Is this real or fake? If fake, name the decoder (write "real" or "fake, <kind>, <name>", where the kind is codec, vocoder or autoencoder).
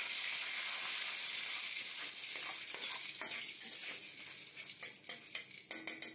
real